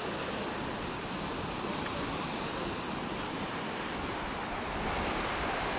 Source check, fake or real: real